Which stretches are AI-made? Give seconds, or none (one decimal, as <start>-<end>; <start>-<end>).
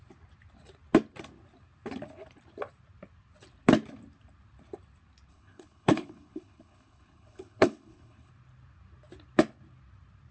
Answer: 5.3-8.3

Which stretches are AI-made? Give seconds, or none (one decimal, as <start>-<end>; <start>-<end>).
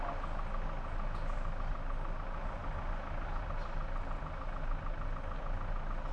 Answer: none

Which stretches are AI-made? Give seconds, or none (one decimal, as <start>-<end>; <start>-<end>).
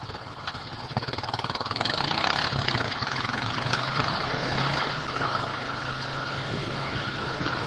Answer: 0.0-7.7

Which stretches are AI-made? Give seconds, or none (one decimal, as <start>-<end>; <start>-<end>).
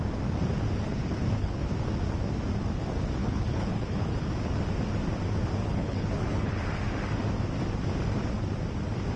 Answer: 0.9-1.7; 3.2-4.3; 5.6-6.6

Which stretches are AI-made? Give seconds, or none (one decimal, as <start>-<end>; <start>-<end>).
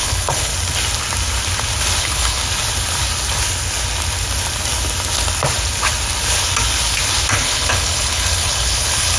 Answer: 0.0-0.5; 2.0-2.4; 7.3-9.2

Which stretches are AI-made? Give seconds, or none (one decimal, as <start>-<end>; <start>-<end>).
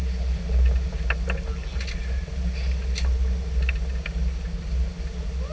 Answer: none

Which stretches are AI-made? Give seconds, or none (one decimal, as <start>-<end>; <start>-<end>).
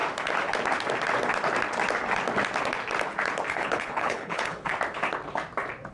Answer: 3.5-4.7